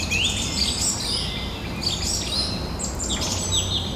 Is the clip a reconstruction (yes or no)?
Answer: no